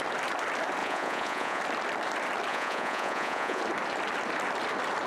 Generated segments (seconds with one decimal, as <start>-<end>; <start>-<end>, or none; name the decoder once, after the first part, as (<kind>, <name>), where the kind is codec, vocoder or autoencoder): 0.8-1.6 (vocoder, Vocos); 2.5-3.6